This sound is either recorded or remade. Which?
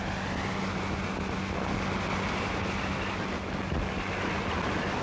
recorded